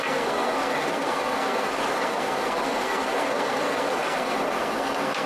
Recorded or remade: remade